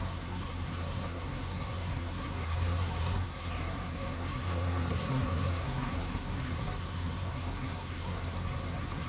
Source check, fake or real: fake